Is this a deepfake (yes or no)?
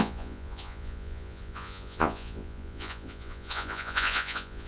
yes